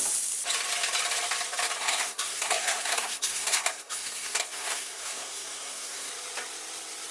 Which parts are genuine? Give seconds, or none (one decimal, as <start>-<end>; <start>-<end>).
0.0-1.8; 6.1-7.1